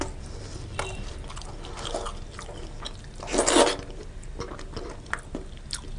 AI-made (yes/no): no